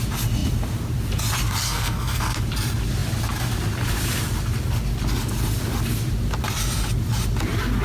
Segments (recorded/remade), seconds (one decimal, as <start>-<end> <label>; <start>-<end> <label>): 0.0-1.6 recorded; 1.6-2.4 remade; 2.4-7.8 recorded